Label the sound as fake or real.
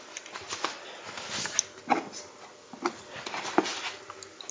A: real